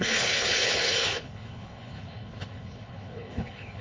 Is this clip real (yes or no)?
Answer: no